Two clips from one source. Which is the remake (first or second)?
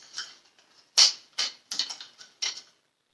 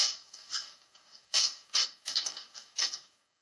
second